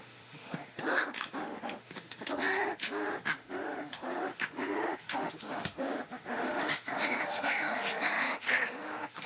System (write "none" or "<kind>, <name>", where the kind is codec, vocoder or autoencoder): autoencoder, DAC-VAE